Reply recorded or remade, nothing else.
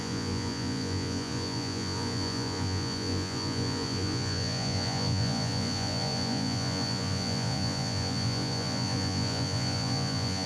remade